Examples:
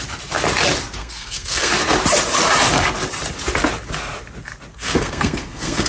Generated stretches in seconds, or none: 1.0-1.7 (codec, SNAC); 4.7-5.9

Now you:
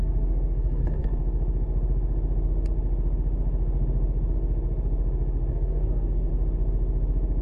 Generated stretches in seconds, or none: 0.0-1.2 (codec, SNAC); 5.5-6.3

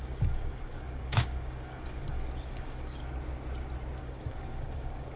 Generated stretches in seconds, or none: 0.0-3.0 (codec, DAC); 4.0-5.2

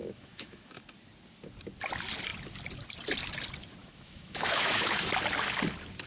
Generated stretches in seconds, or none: 0.0-0.8 (autoencoder, DAC-VAE); 3.8-5.1

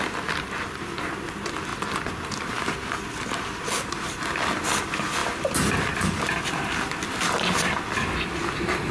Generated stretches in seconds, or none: none

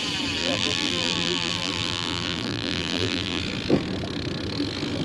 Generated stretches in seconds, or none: 0.4-3.4 (vocoder, BigVGAN v2)

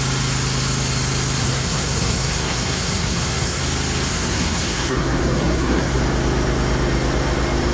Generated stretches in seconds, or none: 1.4-3.6 (codec, SNAC); 4.1-6.0

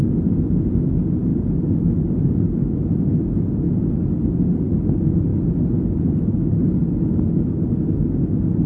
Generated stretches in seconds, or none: none